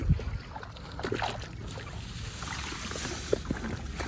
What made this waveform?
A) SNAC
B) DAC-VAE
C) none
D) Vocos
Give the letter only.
C